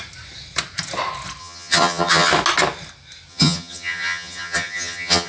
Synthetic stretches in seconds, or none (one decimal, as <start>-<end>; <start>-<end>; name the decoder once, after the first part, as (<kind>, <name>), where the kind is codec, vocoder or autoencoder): 1.4-2.3 (vocoder, HiFi-GAN); 3.3-5.3